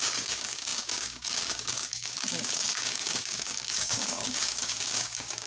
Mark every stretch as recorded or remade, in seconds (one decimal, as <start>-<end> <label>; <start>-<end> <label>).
0.0-5.5 remade